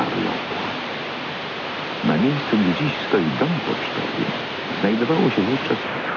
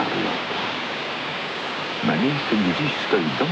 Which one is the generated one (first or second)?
second